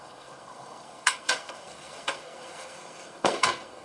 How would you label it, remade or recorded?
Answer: remade